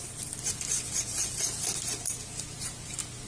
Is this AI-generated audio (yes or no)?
no